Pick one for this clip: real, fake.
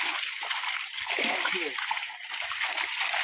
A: real